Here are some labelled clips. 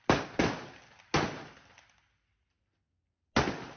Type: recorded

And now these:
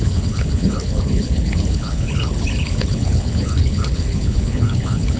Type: remade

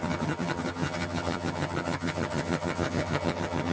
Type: remade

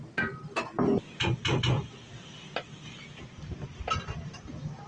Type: recorded